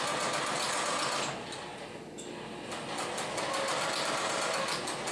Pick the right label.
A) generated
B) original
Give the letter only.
B